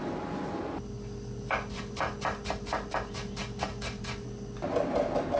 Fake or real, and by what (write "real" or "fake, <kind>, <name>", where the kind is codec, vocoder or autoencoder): real